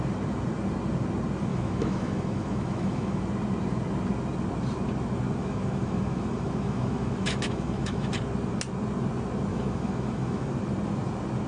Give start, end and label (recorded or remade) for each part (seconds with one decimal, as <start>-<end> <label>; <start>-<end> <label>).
0.0-1.5 recorded; 1.5-3.2 remade; 3.2-5.4 recorded; 5.4-8.1 remade; 8.1-9.5 recorded; 9.5-10.5 remade; 10.5-11.5 recorded

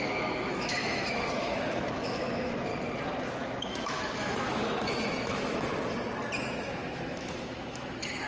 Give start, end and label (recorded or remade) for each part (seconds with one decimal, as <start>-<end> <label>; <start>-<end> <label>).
0.0-2.7 remade; 2.7-3.3 recorded; 3.3-5.7 remade; 5.7-6.4 recorded; 6.4-8.3 remade

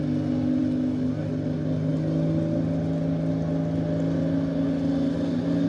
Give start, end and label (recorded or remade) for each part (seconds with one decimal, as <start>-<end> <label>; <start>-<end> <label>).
0.0-5.7 recorded

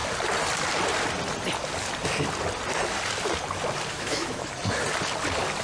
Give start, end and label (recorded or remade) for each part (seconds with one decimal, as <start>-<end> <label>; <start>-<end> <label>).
0.0-3.9 recorded; 3.9-4.5 remade; 4.5-5.6 recorded

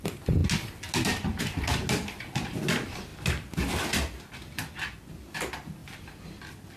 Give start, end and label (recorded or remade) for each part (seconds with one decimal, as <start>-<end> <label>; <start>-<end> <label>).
0.0-6.8 recorded

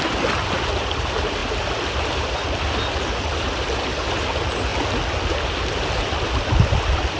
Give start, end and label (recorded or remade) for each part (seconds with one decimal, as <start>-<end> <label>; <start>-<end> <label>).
0.0-7.2 recorded